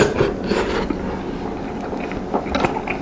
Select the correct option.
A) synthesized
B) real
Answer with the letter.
B